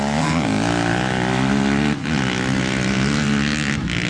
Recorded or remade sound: recorded